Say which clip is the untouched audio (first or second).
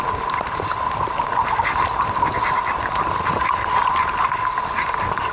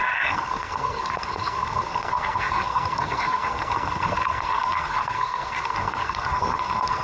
first